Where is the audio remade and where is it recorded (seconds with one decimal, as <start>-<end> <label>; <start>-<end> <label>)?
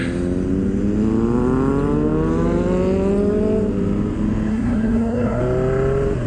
0.0-4.5 recorded; 4.5-5.4 remade; 5.4-6.3 recorded